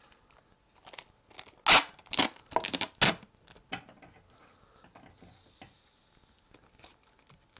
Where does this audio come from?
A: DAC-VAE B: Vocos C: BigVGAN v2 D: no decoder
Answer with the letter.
D